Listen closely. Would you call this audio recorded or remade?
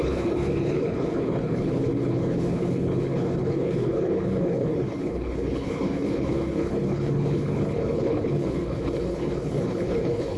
remade